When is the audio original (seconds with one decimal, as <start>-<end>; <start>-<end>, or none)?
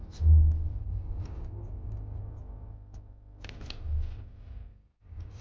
0.0-0.8; 2.2-4.7